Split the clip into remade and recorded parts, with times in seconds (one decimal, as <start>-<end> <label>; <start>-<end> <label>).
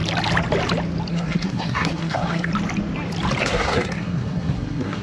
0.0-1.1 recorded; 1.1-2.5 remade; 2.5-3.4 recorded; 3.4-5.0 remade